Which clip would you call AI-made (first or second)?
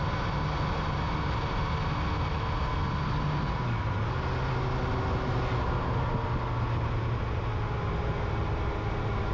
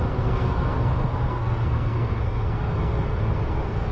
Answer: second